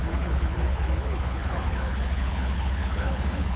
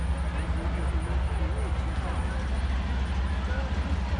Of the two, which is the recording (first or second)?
second